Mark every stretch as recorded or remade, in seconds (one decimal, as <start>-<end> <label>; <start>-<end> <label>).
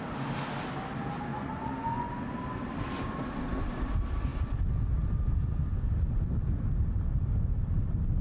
0.0-1.3 recorded; 1.3-2.1 remade; 2.1-8.2 recorded